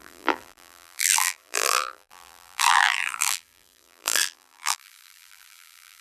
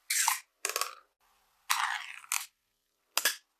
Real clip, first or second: second